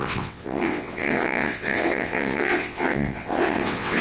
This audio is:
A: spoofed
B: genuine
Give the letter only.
A